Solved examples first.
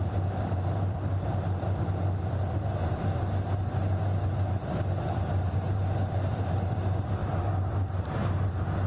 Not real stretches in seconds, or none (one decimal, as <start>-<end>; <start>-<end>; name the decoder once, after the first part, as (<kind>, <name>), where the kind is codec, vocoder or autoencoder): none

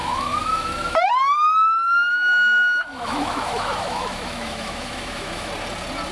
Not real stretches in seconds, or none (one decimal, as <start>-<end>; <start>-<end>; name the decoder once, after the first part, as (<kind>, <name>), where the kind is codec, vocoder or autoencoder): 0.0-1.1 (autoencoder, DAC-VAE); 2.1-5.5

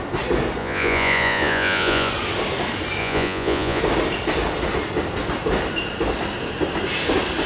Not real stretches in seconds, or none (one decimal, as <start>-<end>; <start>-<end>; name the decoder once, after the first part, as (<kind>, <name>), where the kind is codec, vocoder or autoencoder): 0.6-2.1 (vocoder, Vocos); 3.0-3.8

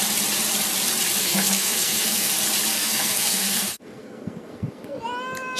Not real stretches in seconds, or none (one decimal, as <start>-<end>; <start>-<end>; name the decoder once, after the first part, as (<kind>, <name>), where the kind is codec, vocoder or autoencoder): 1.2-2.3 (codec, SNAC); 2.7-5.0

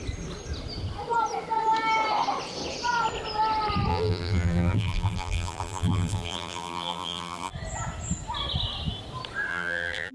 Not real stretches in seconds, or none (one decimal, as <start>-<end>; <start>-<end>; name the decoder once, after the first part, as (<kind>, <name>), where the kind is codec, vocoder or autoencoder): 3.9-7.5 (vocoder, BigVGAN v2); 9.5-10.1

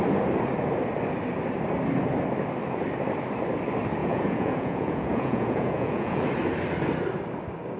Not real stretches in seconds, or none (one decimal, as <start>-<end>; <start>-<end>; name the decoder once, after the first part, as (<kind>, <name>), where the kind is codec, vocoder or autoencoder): 4.0-6.3 (vocoder, Vocos)

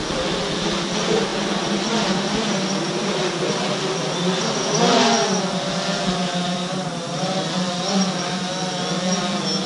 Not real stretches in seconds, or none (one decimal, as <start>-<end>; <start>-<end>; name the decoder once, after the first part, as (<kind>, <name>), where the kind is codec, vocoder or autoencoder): 6.2-7.4 (vocoder, BigVGAN v2)